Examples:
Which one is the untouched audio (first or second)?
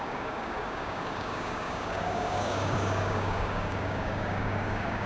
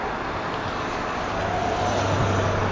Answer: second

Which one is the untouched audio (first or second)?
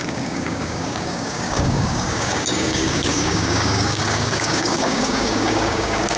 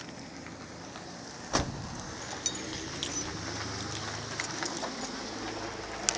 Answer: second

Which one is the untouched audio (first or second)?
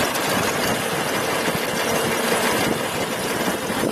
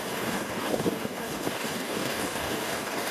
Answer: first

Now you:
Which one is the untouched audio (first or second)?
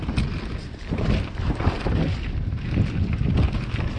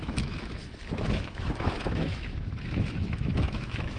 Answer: first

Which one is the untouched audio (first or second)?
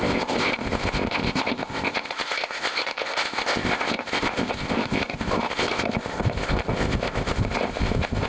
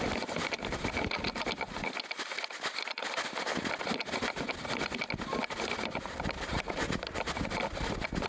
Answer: second